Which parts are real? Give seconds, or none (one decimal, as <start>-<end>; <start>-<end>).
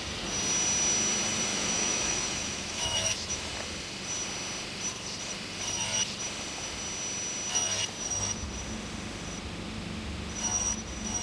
0.0-1.5; 3.5-11.2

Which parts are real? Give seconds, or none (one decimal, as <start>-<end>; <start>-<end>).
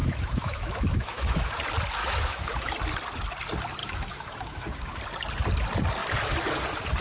1.5-2.0; 2.7-3.8; 5.0-7.0